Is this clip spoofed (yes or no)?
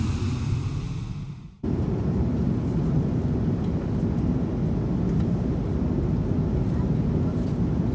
no